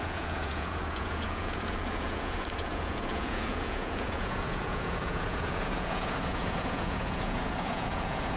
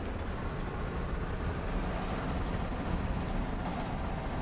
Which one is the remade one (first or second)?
first